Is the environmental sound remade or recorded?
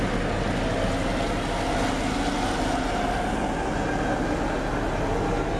recorded